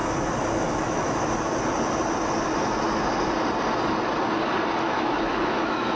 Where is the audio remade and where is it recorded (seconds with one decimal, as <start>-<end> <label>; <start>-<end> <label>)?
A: 0.0-0.5 recorded; 0.5-1.2 remade; 1.2-4.8 recorded; 4.8-6.0 remade